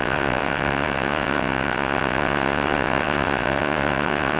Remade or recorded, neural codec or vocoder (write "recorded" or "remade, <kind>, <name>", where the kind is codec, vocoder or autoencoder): remade, vocoder, WaveNeXt